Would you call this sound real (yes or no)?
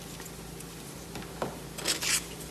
yes